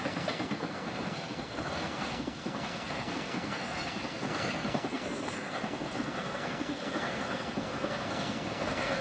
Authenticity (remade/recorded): remade